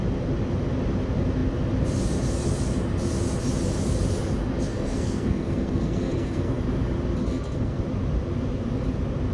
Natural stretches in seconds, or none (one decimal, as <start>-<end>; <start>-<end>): 0.0-4.7; 6.6-7.2; 7.8-9.3